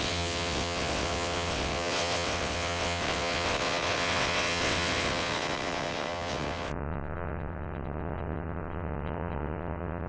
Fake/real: fake